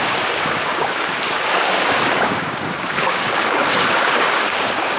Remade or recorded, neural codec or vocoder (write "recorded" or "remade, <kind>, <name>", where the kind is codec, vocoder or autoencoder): remade, codec, DAC